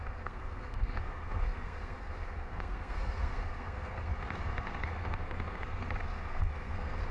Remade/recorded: remade